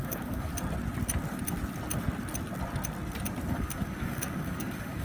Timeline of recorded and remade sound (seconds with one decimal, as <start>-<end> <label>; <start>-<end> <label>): 0.0-0.5 remade; 0.5-3.5 recorded; 3.5-5.0 remade